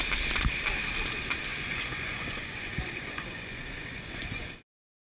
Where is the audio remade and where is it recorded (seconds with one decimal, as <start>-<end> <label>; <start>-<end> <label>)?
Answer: 0.0-1.5 recorded; 1.5-4.5 remade; 4.5-5.0 recorded